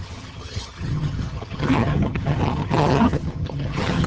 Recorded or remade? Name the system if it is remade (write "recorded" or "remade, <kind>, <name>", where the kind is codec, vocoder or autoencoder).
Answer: remade, vocoder, HiFi-GAN